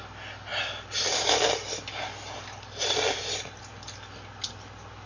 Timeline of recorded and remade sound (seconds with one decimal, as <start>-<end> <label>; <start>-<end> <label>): 0.0-5.1 recorded